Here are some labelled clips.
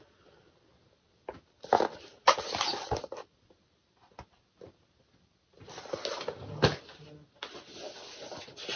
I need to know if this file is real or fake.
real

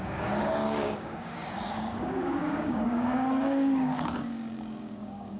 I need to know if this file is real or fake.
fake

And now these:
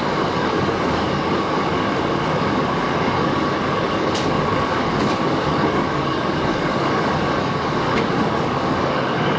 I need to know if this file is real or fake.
fake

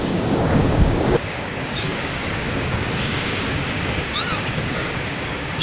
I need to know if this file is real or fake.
fake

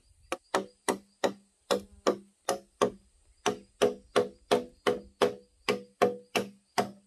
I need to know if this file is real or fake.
real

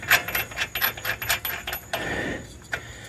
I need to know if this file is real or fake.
real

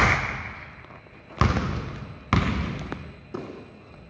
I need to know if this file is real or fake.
real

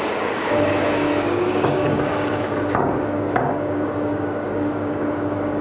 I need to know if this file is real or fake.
fake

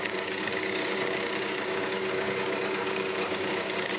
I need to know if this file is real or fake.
fake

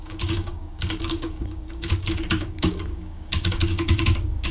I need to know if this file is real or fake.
fake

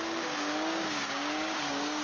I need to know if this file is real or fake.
fake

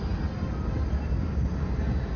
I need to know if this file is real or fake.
real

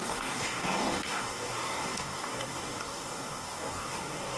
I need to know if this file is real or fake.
fake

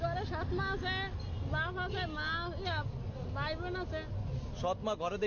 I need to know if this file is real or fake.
real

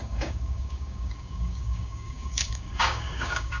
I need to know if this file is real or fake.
fake